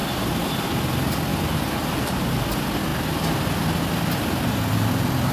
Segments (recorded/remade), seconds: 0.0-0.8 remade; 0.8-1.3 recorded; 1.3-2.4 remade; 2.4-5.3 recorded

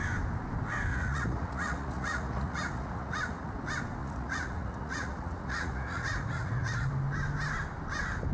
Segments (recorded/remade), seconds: 0.0-0.9 recorded; 0.9-3.5 remade; 3.5-4.0 recorded; 4.0-6.9 remade; 6.9-8.3 recorded

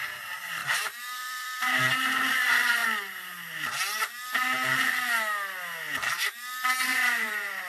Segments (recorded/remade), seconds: 0.0-0.6 recorded; 0.6-1.8 remade; 1.8-6.9 recorded; 6.9-7.7 remade

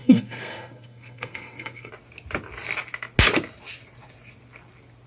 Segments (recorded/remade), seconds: 0.0-1.9 remade; 1.9-5.1 recorded

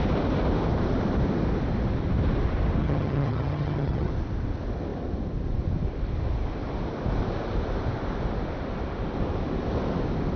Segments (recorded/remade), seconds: 0.0-2.8 recorded; 2.8-4.1 remade; 4.1-10.4 recorded

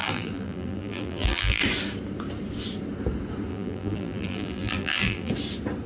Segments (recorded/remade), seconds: 0.0-1.6 remade; 1.6-3.5 recorded; 3.5-5.3 remade; 5.3-5.9 recorded

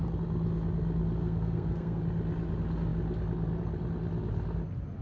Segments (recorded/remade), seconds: 0.0-1.2 recorded; 1.2-2.0 remade; 2.0-5.0 recorded

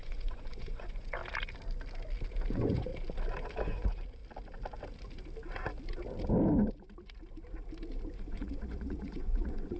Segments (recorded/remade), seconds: 0.0-1.2 remade; 1.2-2.5 recorded; 2.5-2.9 remade; 2.9-3.6 recorded; 3.6-4.2 remade; 4.2-8.1 recorded; 8.1-9.8 remade